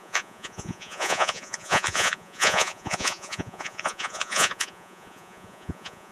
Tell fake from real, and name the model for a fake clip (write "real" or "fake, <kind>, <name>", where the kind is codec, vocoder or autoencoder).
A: fake, vocoder, Vocos